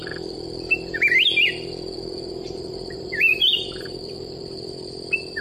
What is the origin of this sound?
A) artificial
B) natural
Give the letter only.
A